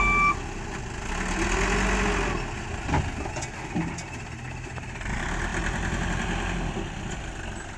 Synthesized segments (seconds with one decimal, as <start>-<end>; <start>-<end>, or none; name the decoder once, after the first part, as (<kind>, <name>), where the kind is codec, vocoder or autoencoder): none